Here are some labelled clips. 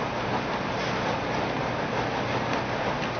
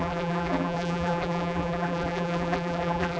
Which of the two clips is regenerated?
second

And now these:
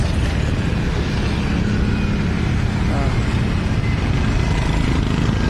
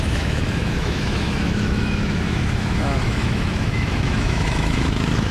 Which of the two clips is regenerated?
second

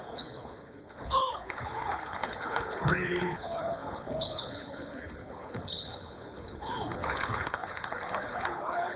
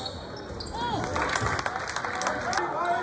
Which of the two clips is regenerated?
first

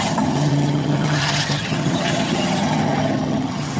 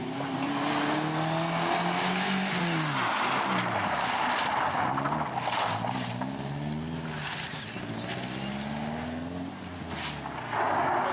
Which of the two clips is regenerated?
first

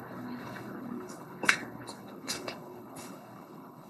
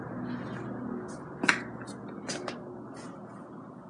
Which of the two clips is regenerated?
first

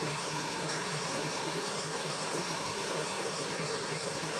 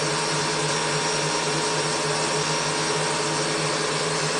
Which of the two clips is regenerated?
first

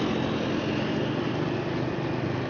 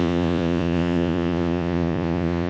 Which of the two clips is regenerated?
second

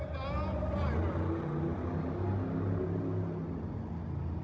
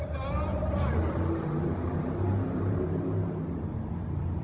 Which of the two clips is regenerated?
second